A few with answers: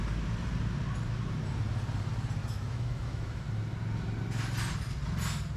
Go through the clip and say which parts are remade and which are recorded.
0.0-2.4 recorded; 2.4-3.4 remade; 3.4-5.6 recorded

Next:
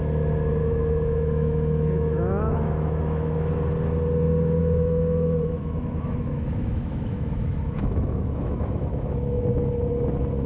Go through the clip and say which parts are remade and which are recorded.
0.0-0.6 recorded; 0.6-3.5 remade; 3.5-4.6 recorded; 4.6-9.4 remade; 9.4-10.5 recorded

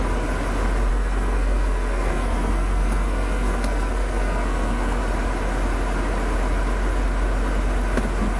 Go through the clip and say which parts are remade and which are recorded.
0.0-0.9 recorded; 0.9-5.0 remade; 5.0-8.4 recorded

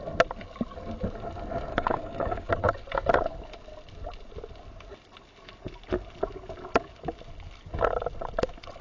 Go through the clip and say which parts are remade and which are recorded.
0.0-1.7 recorded; 1.7-2.5 remade; 2.5-8.8 recorded

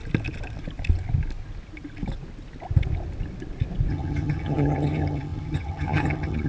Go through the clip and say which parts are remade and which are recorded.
0.0-3.9 recorded; 3.9-6.5 remade

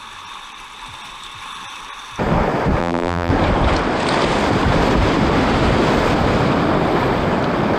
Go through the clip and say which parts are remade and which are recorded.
0.0-2.8 recorded; 2.8-3.3 remade; 3.3-7.8 recorded

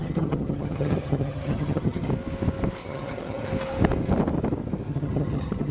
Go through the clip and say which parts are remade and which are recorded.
0.0-2.1 remade; 2.1-2.8 recorded; 2.8-3.5 remade; 3.5-4.9 recorded; 4.9-5.7 remade

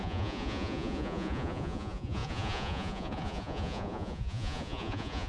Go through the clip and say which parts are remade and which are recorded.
0.0-5.3 remade